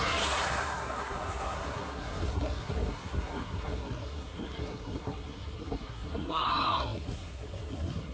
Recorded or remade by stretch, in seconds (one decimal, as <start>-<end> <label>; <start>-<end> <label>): 0.0-8.1 remade